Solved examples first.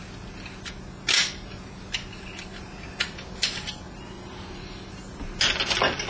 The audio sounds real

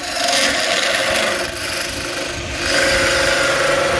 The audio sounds real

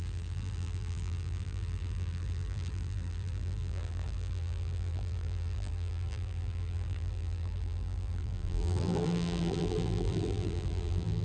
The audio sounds fake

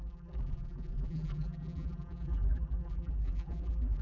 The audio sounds fake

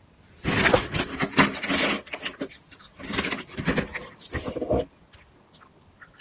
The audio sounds real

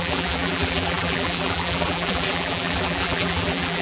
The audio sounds fake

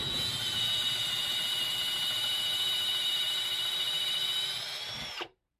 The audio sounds real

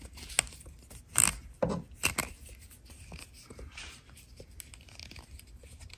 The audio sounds real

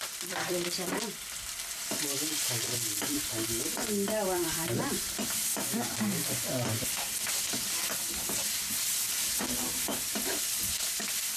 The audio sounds fake